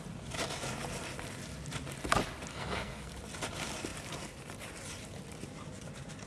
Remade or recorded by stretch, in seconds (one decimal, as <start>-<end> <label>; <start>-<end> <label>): 0.0-2.5 recorded; 2.5-3.1 remade; 3.1-6.3 recorded